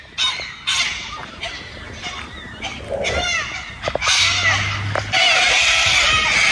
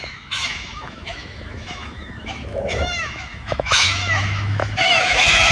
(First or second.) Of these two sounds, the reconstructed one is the second